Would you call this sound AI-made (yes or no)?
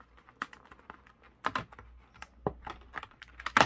no